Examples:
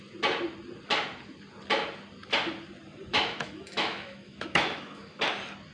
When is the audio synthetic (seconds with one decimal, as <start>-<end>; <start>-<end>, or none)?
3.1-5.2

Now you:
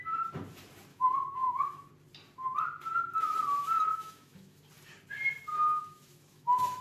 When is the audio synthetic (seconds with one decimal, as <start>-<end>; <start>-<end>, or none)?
0.9-1.9; 3.8-4.6; 5.5-6.8

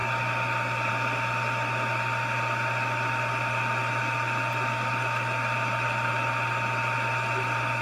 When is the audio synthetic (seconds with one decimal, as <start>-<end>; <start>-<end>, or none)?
none

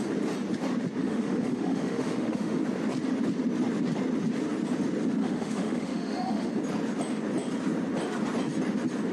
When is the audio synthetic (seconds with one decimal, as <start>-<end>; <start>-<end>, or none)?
1.0-2.6; 5.2-6.5

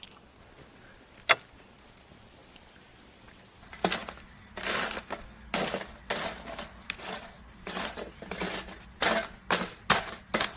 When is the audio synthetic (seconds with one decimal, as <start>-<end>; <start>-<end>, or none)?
none